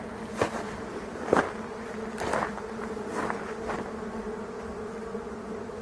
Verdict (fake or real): real